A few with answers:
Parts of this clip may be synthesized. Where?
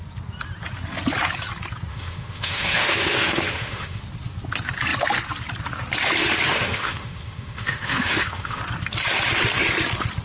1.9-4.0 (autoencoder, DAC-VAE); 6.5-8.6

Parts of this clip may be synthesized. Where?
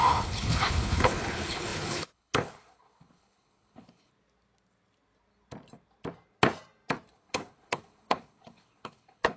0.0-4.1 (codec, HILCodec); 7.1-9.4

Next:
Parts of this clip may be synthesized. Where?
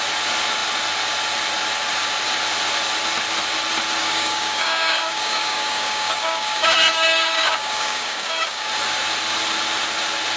4.0-8.7 (codec, DAC)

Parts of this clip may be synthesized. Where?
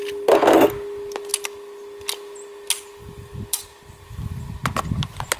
none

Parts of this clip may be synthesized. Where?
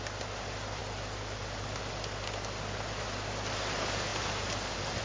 0.8-1.9 (vocoder, BigVGAN v2)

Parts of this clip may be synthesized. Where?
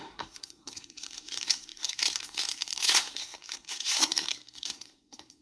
0.0-5.4 (codec, SNAC)